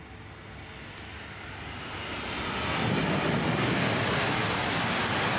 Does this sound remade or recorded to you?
recorded